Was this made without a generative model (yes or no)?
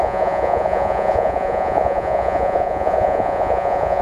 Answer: no